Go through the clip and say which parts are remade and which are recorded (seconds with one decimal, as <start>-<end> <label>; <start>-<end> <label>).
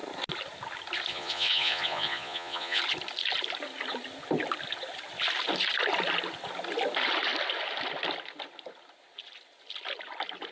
0.0-1.1 recorded; 1.1-2.8 remade; 2.8-10.5 recorded